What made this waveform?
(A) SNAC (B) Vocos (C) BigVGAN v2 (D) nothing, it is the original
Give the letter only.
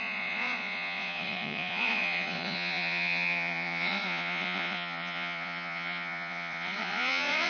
B